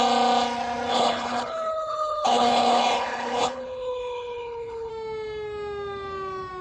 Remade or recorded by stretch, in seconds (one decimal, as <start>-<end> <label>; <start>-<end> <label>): 0.0-0.9 recorded; 0.9-4.9 remade; 4.9-6.6 recorded